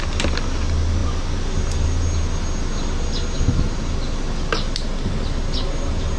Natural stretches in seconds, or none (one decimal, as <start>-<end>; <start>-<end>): 0.0-6.2